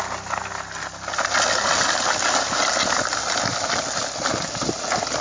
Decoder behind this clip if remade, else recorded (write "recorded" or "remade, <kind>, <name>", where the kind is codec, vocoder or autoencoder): recorded